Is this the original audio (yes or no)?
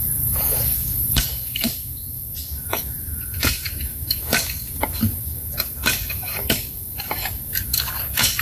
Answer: no